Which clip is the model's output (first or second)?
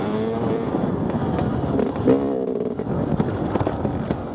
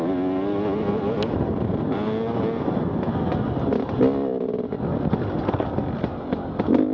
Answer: first